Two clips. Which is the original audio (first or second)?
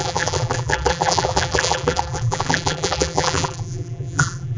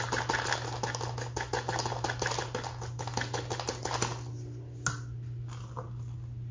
second